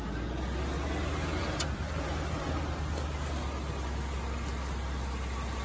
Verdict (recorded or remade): recorded